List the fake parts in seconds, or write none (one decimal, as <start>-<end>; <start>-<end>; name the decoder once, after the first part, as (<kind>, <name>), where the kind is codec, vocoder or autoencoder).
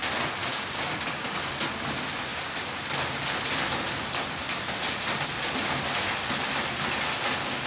0.4-1.4 (codec, DAC)